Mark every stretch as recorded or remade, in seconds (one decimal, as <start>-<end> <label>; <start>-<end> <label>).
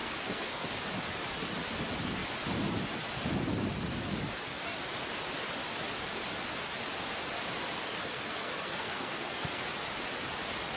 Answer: 0.0-0.7 remade; 0.7-7.8 recorded; 7.8-9.6 remade; 9.6-10.8 recorded